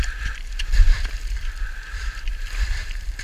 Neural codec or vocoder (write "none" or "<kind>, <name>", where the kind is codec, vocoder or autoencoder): vocoder, BigVGAN v2